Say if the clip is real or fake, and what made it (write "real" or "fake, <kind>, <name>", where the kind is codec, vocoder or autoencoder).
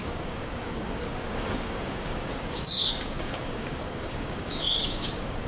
fake, codec, DAC